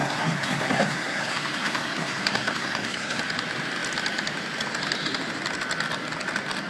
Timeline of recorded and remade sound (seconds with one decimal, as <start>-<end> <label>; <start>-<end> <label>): 0.0-3.2 remade; 3.2-6.7 recorded